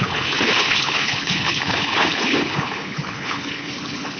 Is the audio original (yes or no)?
no